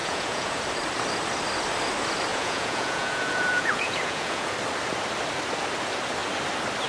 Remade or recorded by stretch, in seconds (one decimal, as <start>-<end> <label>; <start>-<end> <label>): 0.0-0.6 remade; 0.6-2.3 recorded; 2.3-4.5 remade; 4.5-6.9 recorded